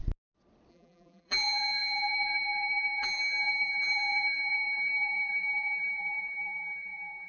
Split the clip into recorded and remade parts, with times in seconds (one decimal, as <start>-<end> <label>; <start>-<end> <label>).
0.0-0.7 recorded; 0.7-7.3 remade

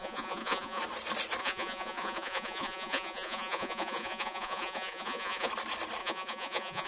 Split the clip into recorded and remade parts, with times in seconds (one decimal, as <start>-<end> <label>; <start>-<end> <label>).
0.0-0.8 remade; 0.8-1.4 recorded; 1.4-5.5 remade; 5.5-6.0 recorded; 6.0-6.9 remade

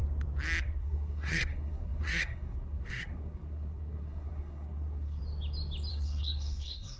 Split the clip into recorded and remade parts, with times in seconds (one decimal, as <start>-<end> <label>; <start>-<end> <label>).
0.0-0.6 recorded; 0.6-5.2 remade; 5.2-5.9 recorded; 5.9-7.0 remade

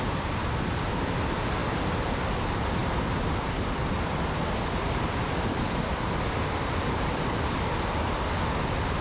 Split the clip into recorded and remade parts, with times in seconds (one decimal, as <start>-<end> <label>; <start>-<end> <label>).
0.0-2.8 recorded; 2.8-7.2 remade; 7.2-9.0 recorded

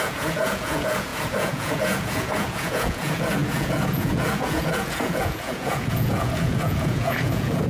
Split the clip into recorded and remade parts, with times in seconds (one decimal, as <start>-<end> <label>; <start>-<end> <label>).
0.0-7.7 remade

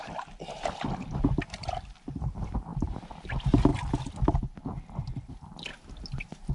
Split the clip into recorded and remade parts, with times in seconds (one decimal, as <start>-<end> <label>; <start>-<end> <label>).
0.0-5.7 remade; 5.7-6.5 recorded